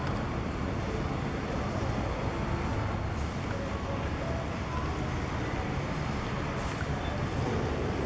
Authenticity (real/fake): real